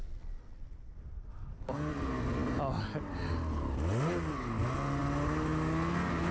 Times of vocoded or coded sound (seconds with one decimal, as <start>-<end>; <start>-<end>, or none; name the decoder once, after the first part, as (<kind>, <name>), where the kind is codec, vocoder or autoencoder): none